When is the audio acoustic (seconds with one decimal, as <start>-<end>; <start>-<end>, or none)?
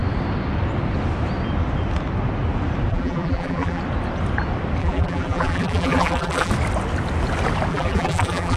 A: 0.0-2.9; 3.8-4.8; 6.5-7.7